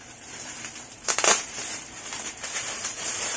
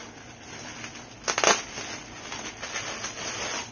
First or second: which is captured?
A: second